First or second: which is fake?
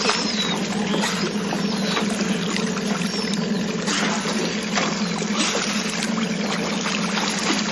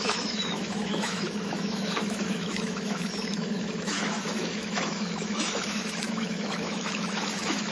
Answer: second